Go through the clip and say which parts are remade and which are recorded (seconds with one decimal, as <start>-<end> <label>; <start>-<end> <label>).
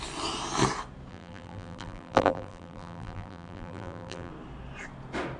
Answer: 0.0-1.1 recorded; 1.1-4.3 remade; 4.3-5.4 recorded